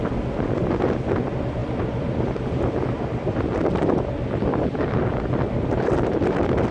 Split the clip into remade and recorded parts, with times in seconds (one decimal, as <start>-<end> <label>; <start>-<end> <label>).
0.0-6.7 recorded